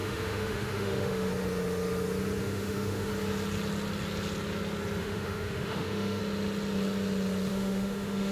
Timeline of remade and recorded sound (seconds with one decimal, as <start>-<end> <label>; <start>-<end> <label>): 0.0-1.3 remade; 1.3-2.4 recorded; 2.4-3.1 remade; 3.1-5.0 recorded; 5.0-6.2 remade; 6.2-7.5 recorded; 7.5-8.3 remade